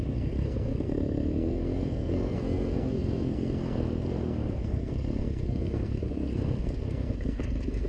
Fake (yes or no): yes